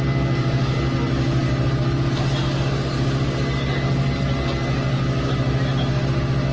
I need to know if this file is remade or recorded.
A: recorded